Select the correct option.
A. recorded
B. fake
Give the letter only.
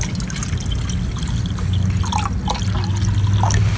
A